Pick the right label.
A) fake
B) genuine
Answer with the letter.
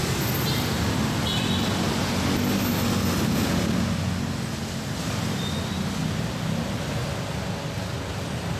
B